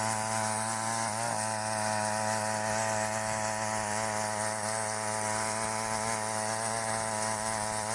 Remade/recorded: recorded